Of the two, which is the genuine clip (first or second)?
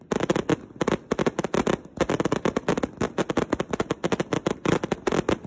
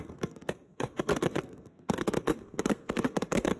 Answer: first